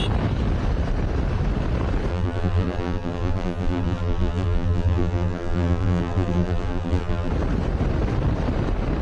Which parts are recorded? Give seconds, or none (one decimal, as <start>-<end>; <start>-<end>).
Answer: 0.0-2.1; 7.3-9.0